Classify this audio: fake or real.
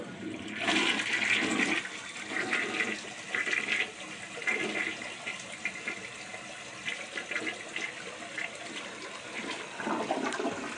real